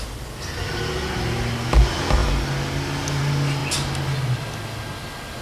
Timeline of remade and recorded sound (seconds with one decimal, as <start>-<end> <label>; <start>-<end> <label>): 0.0-5.4 recorded